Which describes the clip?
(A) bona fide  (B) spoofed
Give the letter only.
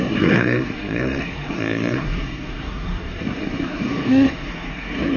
B